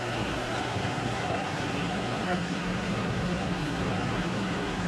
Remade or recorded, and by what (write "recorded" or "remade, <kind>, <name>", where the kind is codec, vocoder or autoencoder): remade, codec, SNAC